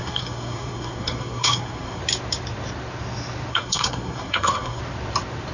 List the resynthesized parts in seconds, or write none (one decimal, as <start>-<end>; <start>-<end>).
0.0-2.0; 3.5-4.8